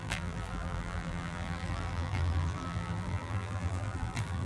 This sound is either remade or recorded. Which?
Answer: remade